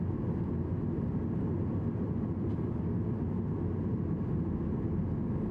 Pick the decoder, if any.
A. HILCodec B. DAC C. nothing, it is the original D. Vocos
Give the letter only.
C